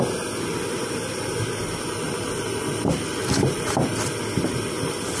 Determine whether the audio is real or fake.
real